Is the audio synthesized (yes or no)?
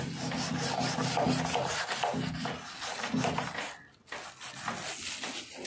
no